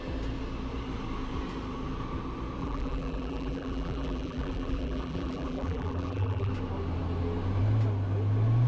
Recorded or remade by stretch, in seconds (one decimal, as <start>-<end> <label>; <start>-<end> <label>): 0.0-2.6 recorded; 2.6-6.5 remade; 6.5-8.7 recorded